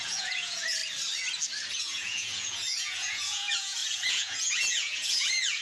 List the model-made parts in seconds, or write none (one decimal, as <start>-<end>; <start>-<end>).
0.0-0.8; 1.8-5.6